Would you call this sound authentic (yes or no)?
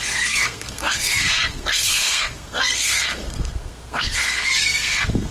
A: no